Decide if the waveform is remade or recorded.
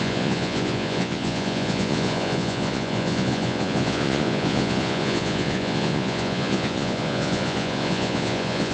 remade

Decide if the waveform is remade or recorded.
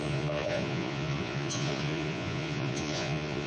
remade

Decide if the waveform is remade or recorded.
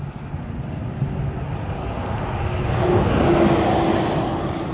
recorded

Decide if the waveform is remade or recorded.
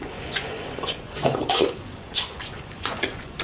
remade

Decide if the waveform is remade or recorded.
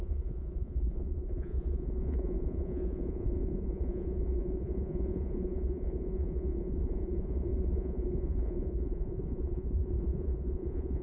remade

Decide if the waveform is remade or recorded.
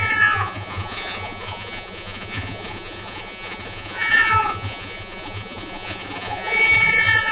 remade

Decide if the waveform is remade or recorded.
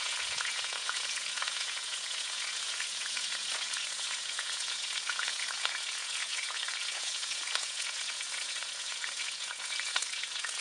remade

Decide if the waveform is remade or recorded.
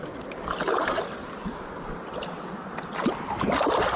recorded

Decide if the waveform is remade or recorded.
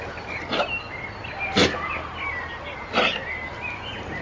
recorded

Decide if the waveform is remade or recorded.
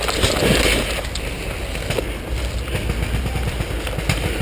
recorded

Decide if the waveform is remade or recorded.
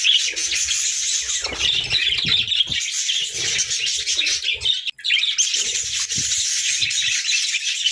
recorded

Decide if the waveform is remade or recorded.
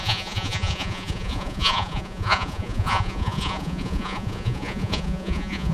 remade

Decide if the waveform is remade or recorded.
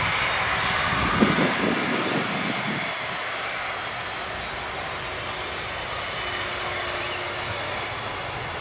recorded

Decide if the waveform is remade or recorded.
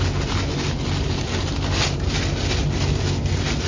recorded